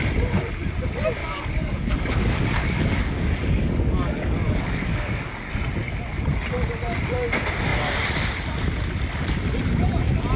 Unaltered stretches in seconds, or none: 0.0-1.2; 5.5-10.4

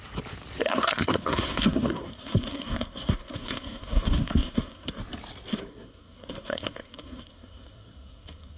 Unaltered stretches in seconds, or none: 0.0-0.6; 5.0-5.5